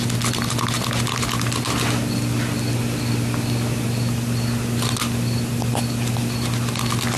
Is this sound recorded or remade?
recorded